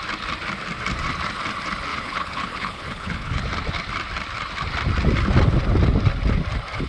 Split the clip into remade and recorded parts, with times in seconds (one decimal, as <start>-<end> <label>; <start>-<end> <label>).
0.0-1.9 recorded; 1.9-3.4 remade; 3.4-6.9 recorded